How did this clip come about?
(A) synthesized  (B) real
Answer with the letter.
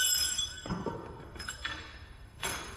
A